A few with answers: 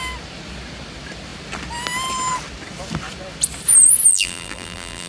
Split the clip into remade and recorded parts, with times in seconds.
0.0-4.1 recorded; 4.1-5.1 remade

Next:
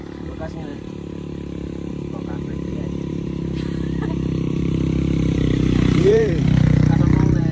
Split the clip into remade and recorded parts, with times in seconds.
0.0-2.7 recorded; 2.7-7.0 remade; 7.0-7.5 recorded

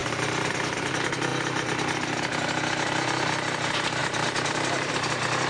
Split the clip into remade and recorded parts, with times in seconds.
0.0-0.9 remade; 0.9-4.0 recorded; 4.0-4.9 remade; 4.9-5.5 recorded

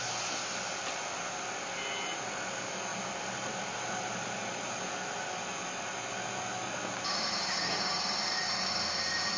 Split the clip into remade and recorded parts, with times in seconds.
0.0-2.9 recorded; 2.9-5.4 remade; 5.4-9.4 recorded

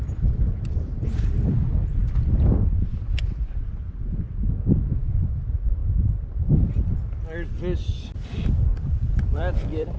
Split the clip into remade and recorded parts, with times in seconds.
0.0-3.8 recorded; 3.8-4.6 remade; 4.6-8.7 recorded; 8.7-10.0 remade

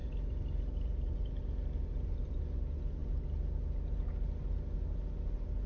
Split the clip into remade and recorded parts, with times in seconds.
0.0-2.4 remade; 2.4-5.7 recorded

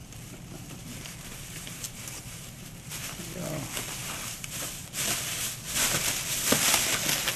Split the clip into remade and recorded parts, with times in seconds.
0.0-3.2 remade; 3.2-4.0 recorded; 4.0-5.5 remade; 5.5-7.4 recorded

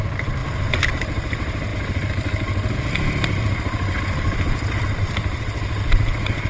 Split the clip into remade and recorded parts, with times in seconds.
0.0-0.4 remade; 0.4-0.9 recorded; 0.9-1.7 remade; 1.7-5.0 recorded; 5.0-6.5 remade